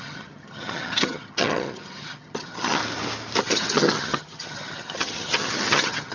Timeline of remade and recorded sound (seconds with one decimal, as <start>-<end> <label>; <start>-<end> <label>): 0.0-2.8 remade; 2.8-3.4 recorded; 3.4-6.1 remade